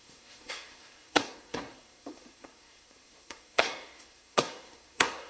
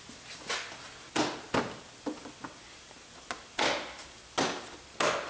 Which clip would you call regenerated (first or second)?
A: first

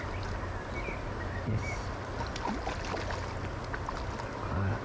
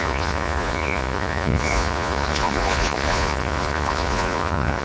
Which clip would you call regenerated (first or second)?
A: second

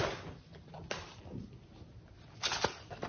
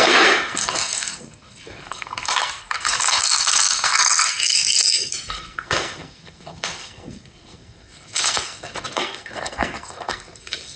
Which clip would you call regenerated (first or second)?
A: second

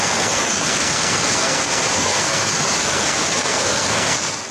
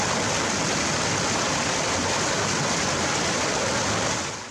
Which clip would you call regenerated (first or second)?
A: first